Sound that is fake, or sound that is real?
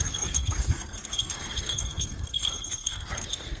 fake